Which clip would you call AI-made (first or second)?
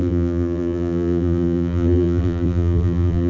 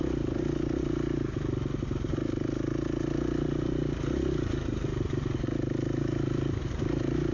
first